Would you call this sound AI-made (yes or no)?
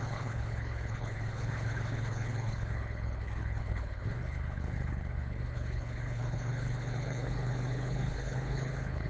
yes